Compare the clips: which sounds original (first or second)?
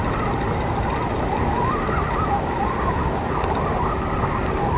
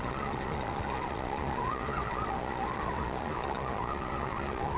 first